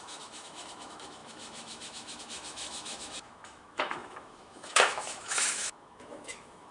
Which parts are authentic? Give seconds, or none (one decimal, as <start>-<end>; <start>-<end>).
none